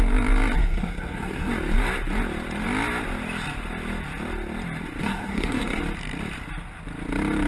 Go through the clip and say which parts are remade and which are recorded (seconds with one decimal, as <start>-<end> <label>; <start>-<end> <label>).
0.0-0.6 recorded; 0.6-1.5 remade; 1.5-5.0 recorded; 5.0-5.8 remade; 5.8-7.5 recorded